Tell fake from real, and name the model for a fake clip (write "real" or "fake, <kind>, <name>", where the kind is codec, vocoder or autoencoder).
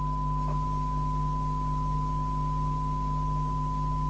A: real